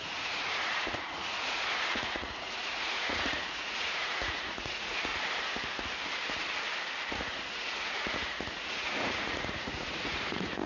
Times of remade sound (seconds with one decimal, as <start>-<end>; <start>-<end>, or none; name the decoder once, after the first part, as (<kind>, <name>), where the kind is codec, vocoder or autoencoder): 0.0-5.1 (vocoder, Vocos); 7.1-10.7